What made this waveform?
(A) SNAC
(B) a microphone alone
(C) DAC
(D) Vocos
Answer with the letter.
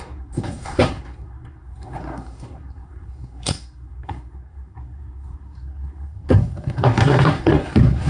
A